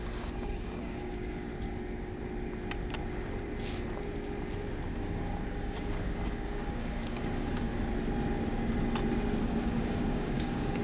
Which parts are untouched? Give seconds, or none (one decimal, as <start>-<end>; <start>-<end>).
1.5-4.9; 7.7-9.4